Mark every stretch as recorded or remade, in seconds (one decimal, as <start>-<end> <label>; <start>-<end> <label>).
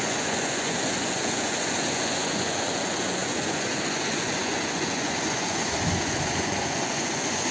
0.0-7.5 remade